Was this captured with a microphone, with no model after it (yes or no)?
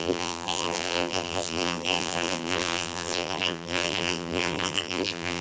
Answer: no